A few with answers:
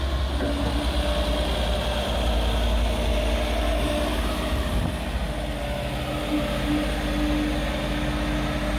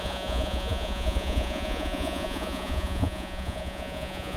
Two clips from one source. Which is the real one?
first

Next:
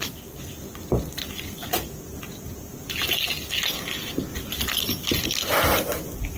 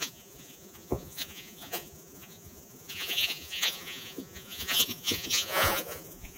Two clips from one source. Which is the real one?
first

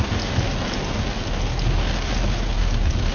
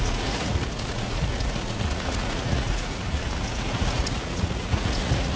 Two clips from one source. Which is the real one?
first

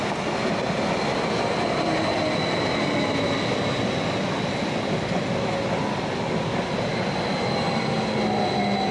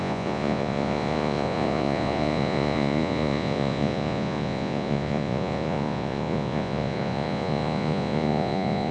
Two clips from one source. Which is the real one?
first